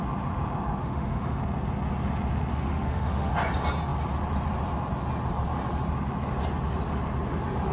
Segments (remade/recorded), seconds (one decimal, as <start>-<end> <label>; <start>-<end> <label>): 0.0-0.8 recorded; 0.8-1.4 remade; 1.4-2.5 recorded; 2.5-3.3 remade; 3.3-7.7 recorded